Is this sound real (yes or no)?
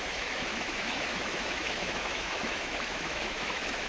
no